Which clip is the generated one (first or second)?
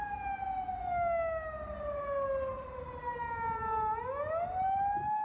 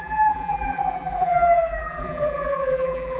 second